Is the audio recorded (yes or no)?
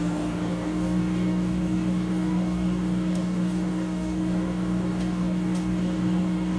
no